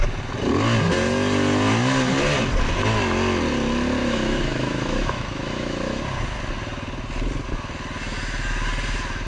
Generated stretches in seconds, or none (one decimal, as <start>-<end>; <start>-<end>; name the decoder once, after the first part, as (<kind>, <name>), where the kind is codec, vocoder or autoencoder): 4.0-6.0 (autoencoder, DAC-VAE)

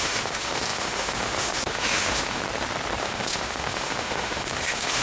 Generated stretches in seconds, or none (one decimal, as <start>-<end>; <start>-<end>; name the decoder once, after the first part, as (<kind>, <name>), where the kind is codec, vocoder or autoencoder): 0.0-2.4 (autoencoder, DAC-VAE); 3.0-5.0

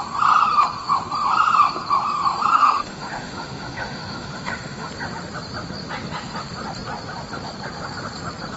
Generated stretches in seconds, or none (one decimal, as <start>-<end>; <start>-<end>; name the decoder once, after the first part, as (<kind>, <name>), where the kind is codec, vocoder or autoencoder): 2.5-4.9 (autoencoder, DAC-VAE)

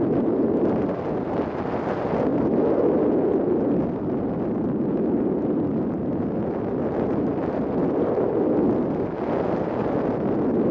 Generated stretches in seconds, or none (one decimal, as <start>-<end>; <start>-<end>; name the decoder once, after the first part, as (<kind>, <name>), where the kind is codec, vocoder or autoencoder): none

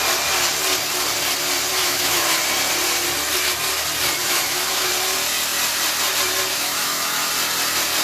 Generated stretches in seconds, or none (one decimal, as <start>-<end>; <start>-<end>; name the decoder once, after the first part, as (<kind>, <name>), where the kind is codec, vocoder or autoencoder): 1.8-2.4 (autoencoder, DAC-VAE); 4.2-4.9; 6.5-7.3

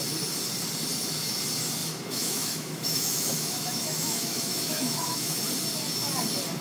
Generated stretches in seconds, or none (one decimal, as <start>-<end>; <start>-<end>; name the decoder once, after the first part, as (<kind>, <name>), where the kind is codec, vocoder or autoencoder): 1.8-5.4 (autoencoder, DAC-VAE)